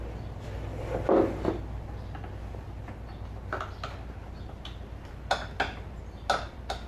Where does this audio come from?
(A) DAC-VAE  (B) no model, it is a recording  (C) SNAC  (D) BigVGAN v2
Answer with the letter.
B